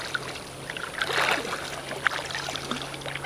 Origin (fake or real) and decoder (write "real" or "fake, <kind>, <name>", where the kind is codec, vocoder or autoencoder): real